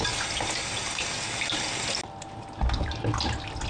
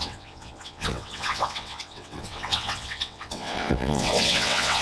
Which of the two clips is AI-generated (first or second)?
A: second